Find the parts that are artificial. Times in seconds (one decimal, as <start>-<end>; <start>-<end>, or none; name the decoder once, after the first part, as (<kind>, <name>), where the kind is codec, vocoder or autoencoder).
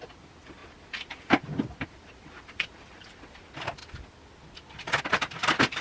0.6-3.2 (vocoder, BigVGAN v2)